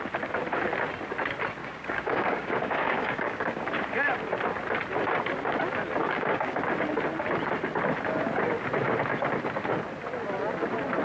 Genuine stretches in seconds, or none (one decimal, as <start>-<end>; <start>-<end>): 0.0-1.6; 3.7-6.0; 6.6-11.0